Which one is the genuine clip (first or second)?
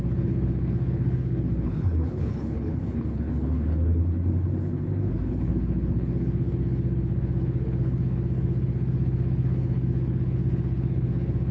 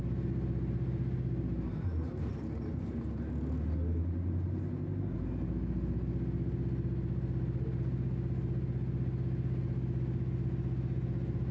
second